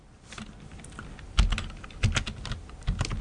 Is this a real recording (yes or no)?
yes